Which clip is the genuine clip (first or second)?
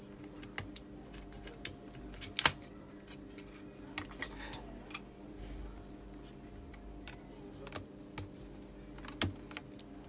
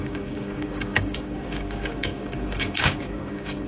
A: first